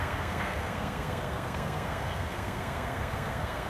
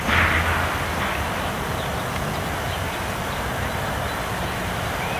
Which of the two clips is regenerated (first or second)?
first